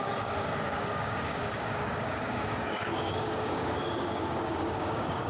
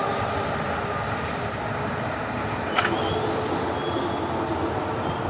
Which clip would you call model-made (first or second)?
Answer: first